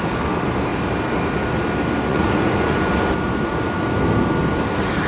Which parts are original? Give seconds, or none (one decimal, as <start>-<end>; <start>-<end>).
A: 0.0-2.1; 2.9-5.1